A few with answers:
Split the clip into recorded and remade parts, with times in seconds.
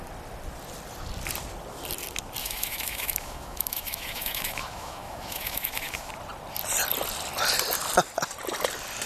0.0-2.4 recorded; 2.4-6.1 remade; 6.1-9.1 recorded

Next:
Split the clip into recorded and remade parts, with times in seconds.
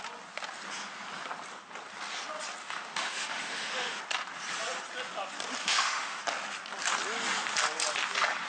0.0-2.6 recorded; 2.6-4.0 remade; 4.0-5.6 recorded; 5.6-6.2 remade; 6.2-8.5 recorded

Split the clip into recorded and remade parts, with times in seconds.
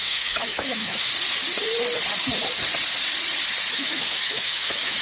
0.0-1.1 remade; 1.1-3.7 recorded; 3.7-5.0 remade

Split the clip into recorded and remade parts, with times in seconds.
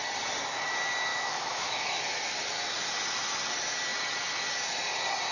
0.0-1.1 recorded; 1.1-2.0 remade; 2.0-5.3 recorded